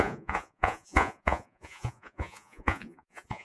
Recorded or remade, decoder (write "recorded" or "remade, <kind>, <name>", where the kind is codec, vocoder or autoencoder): remade, vocoder, Vocos